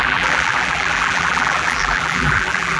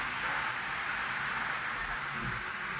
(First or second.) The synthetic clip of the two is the first